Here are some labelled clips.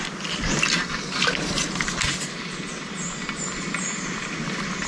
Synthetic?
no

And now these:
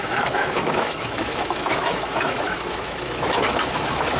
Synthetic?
yes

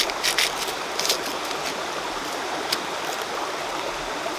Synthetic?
no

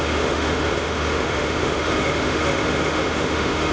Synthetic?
yes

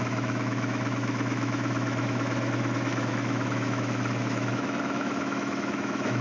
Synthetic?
yes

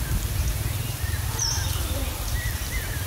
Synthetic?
no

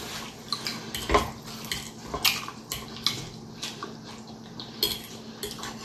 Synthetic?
no